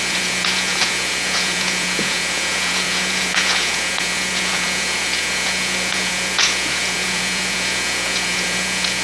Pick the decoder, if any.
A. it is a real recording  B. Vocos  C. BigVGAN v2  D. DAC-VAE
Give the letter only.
B